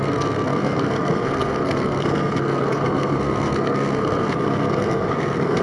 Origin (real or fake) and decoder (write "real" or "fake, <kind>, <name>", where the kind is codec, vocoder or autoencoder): fake, codec, SNAC